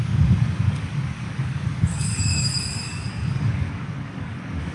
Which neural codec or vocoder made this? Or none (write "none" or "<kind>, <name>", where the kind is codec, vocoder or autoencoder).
codec, DAC